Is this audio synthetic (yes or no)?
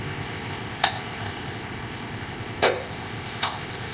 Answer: yes